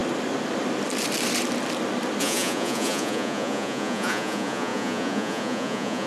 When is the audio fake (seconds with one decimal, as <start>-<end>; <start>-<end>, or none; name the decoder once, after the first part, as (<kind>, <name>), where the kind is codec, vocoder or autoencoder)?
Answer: 2.2-6.1 (vocoder, Vocos)